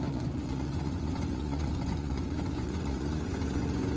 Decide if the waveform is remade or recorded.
remade